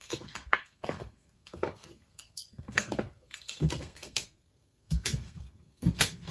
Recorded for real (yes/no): no